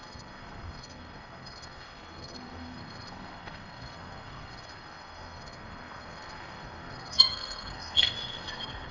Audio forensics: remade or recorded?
remade